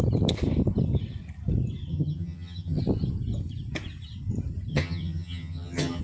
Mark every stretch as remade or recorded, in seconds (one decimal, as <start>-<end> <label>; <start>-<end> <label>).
0.0-1.9 recorded; 1.9-2.8 remade; 2.8-4.7 recorded; 4.7-6.0 remade